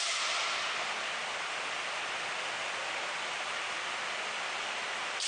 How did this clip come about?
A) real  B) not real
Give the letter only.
A